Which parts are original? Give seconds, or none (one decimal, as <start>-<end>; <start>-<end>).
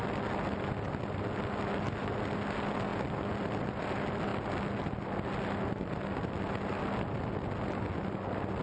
0.0-8.6